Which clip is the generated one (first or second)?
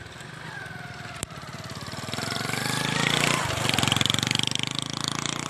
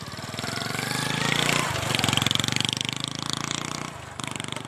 first